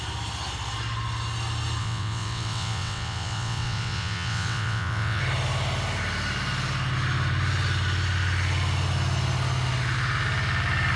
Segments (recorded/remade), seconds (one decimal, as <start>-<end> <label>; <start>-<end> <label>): 0.0-1.8 recorded; 1.8-5.2 remade; 5.2-11.0 recorded